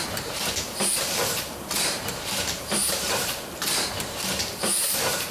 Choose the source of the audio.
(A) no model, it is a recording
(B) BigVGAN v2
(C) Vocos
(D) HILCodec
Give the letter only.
B